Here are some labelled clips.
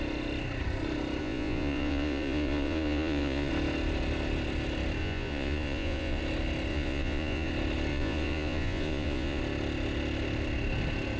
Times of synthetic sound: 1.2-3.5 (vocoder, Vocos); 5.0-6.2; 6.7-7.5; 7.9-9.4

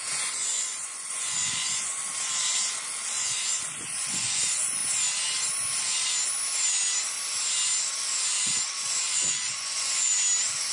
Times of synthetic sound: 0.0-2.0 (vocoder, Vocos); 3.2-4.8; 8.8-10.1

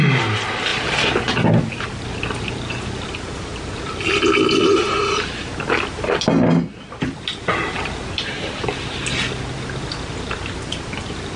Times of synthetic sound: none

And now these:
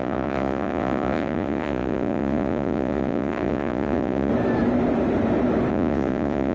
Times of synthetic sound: 0.0-4.3 (vocoder, Vocos); 5.7-6.5

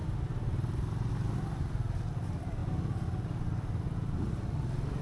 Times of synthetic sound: none